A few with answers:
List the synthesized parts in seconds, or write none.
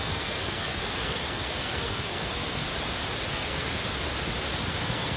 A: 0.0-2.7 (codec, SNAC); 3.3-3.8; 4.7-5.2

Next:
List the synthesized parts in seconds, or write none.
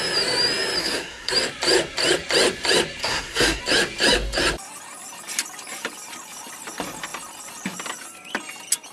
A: 0.8-1.3 (codec, SNAC); 3.0-3.6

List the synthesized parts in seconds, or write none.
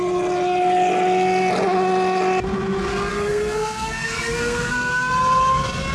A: 3.1-5.1 (codec, SNAC)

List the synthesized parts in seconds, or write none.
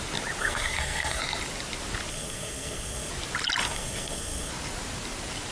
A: 0.4-1.2 (codec, SNAC); 2.1-3.1; 3.6-4.5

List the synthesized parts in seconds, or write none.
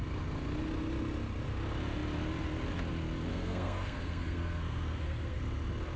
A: 3.3-5.4 (codec, SNAC)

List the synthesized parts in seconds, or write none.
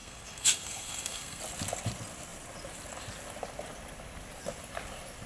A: 0.0-1.4 (codec, SNAC)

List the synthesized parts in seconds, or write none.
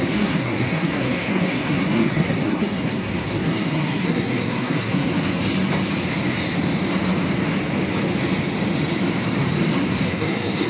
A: 0.0-5.1 (codec, SNAC); 9.9-10.7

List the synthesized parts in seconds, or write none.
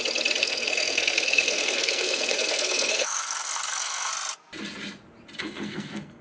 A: 0.4-4.1 (codec, SNAC); 5.4-6.2